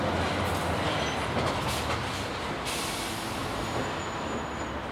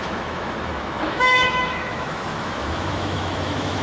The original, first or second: first